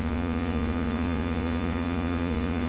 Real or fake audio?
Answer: fake